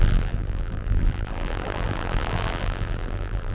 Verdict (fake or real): fake